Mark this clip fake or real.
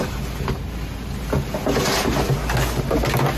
real